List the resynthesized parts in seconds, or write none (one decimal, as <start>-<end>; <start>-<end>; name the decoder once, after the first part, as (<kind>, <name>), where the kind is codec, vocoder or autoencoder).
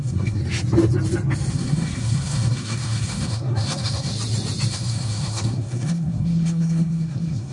0.0-0.4 (codec, SNAC); 1.5-4.1; 4.7-7.5